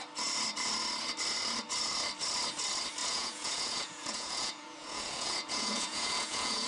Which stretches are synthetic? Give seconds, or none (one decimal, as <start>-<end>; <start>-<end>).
3.0-6.7

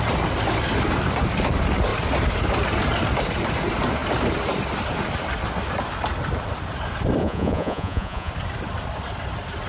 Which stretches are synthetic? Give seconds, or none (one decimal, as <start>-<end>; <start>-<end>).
7.2-8.3

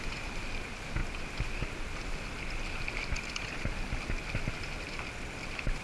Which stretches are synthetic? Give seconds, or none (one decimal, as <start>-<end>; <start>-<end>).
none

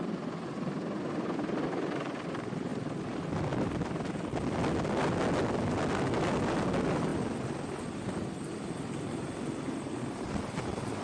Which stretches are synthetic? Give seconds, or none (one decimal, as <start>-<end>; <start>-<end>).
none

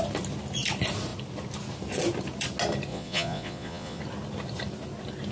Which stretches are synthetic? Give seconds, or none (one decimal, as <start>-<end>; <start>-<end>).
2.9-4.0

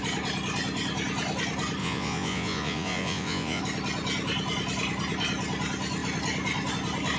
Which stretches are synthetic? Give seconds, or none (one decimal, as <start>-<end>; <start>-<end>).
1.8-3.6

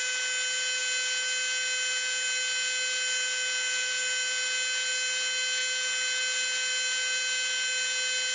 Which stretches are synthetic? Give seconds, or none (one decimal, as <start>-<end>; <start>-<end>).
none

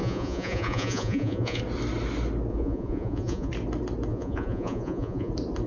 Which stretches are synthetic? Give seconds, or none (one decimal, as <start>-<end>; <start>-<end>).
0.0-1.6; 2.5-3.5; 4.1-5.3